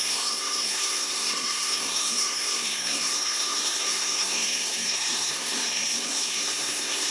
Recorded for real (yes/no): no